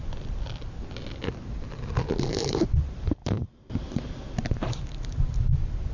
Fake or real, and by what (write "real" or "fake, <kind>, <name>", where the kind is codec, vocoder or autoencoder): real